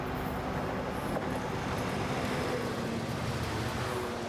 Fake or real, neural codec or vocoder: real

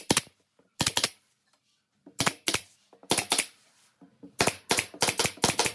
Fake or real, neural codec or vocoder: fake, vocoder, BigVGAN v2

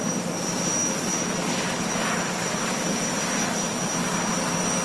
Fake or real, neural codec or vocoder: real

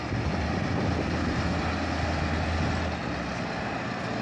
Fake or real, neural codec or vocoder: real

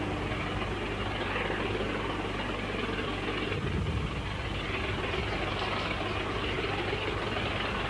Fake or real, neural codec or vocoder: real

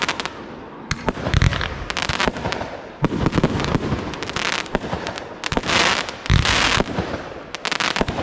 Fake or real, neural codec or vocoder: real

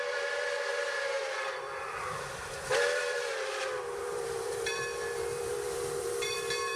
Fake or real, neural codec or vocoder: fake, vocoder, BigVGAN v2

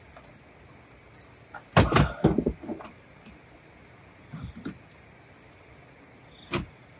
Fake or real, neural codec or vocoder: real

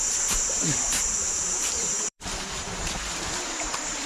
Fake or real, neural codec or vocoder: fake, vocoder, BigVGAN v2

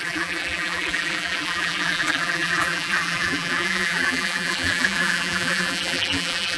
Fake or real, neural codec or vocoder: fake, vocoder, BigVGAN v2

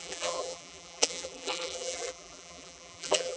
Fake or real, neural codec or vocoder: fake, vocoder, BigVGAN v2